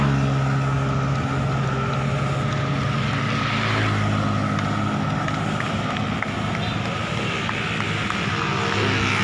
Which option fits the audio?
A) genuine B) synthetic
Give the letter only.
A